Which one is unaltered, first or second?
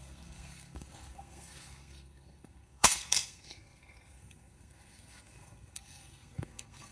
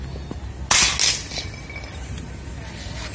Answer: second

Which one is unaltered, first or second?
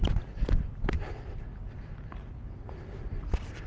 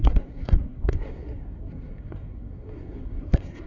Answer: first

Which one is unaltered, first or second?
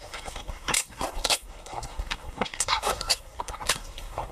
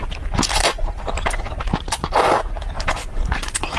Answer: second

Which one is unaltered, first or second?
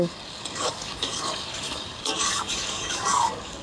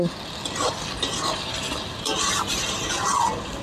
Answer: second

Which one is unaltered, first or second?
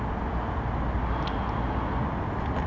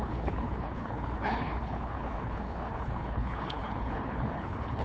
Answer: first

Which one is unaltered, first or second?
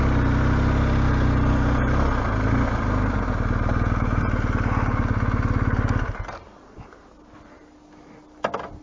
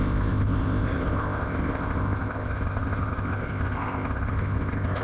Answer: first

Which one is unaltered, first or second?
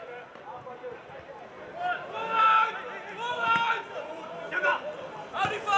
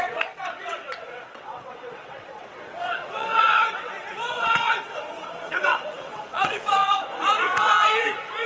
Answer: first